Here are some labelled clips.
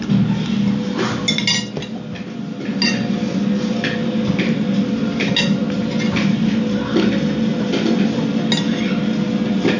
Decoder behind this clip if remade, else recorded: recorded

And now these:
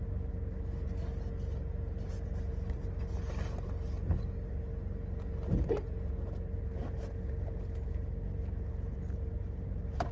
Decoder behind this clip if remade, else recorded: recorded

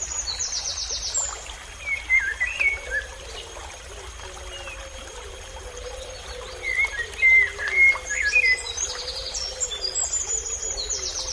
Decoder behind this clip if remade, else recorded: recorded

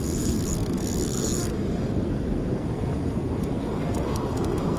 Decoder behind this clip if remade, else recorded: remade, codec, SNAC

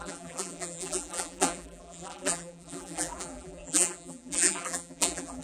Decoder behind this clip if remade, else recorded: remade, vocoder, BigVGAN v2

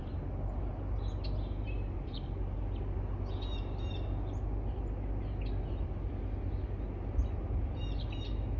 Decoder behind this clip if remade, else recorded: recorded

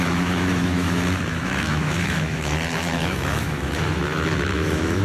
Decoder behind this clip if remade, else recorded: remade, autoencoder, DAC-VAE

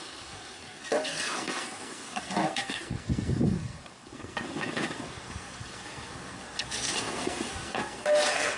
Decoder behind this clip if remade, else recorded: remade, codec, SNAC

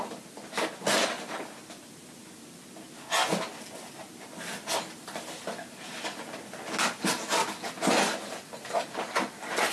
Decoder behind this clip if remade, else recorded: recorded